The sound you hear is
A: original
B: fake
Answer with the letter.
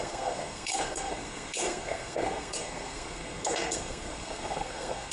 B